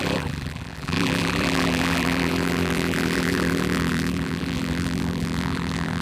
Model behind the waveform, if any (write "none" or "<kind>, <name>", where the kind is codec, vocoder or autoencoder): vocoder, BigVGAN v2